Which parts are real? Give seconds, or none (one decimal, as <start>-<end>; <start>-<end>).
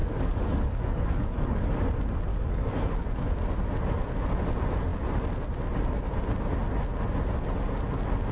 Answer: 1.7-2.3; 2.9-8.3